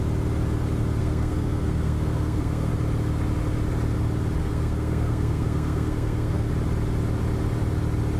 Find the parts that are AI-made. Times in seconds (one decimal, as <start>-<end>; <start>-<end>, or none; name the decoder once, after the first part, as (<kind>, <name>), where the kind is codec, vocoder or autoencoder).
1.0-2.7 (codec, SNAC); 4.4-6.5